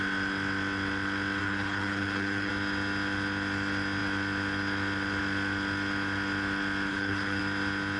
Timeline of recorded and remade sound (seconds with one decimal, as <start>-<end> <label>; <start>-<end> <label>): 0.0-1.4 recorded; 1.4-2.5 remade; 2.5-6.9 recorded; 6.9-7.4 remade; 7.4-8.0 recorded

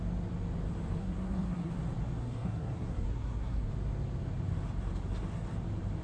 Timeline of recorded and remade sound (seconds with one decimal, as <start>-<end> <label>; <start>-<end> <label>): 0.0-1.0 recorded; 1.0-1.7 remade; 1.7-2.2 recorded; 2.2-3.7 remade; 3.7-6.0 recorded